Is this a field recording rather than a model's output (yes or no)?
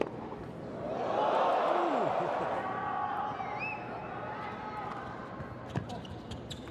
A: yes